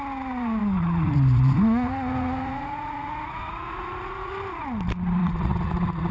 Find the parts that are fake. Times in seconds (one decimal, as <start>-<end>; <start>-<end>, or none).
0.6-4.3; 5.2-6.1